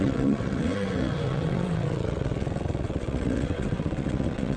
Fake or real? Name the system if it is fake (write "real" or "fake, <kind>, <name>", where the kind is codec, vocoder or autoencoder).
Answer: fake, vocoder, WaveNeXt